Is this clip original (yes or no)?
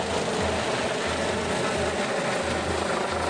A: yes